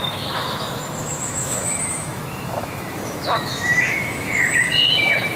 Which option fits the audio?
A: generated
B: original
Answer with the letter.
A